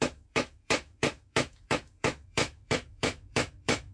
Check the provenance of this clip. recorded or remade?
remade